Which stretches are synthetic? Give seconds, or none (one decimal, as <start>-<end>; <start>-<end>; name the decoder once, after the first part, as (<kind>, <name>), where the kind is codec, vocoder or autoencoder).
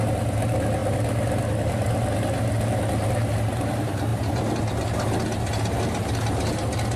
none